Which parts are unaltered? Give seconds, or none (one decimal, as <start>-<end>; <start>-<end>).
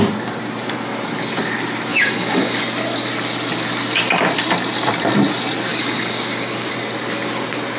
0.0-1.9; 2.6-5.7; 6.7-7.8